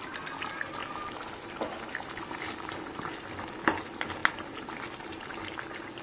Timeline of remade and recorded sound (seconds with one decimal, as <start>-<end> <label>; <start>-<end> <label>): 0.0-6.0 recorded